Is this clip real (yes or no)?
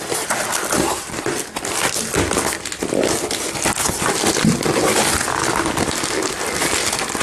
yes